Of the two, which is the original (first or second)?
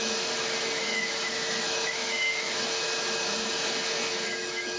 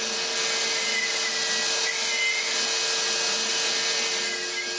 second